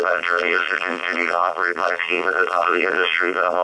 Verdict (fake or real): fake